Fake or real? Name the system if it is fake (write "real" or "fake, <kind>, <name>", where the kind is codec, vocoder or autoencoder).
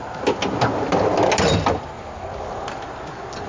real